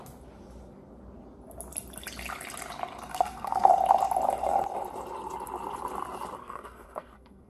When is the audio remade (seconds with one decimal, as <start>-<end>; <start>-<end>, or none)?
3.1-3.7; 6.4-7.5